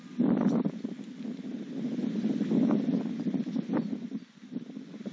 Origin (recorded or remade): recorded